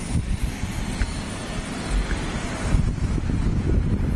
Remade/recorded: recorded